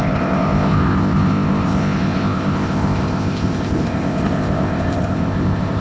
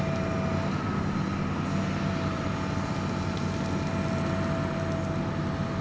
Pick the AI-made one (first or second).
first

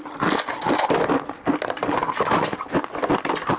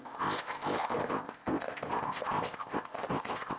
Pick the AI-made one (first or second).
second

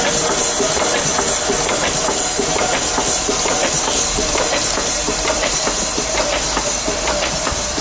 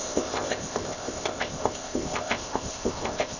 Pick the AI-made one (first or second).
second